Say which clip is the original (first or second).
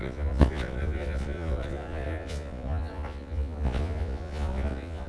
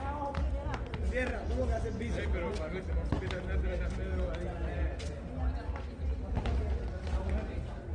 second